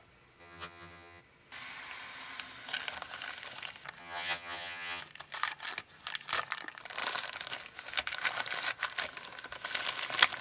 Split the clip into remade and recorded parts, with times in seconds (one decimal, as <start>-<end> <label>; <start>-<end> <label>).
0.0-0.4 recorded; 0.4-1.2 remade; 1.2-4.0 recorded; 4.0-5.0 remade; 5.0-10.4 recorded